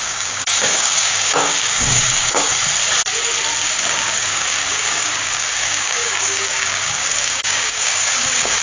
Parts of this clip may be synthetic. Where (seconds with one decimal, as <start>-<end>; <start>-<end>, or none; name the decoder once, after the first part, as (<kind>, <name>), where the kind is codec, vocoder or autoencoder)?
0.0-2.5 (codec, DAC); 3.6-8.6